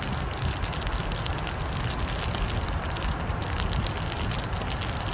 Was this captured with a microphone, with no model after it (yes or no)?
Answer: yes